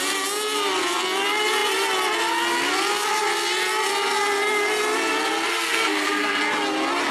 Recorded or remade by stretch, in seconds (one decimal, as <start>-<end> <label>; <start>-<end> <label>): 0.0-5.5 recorded; 5.5-6.4 remade; 6.4-7.1 recorded